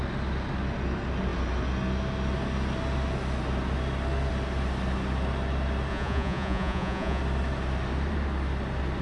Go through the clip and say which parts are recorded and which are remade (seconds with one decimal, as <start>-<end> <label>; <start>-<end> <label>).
0.0-5.9 recorded; 5.9-7.2 remade; 7.2-9.0 recorded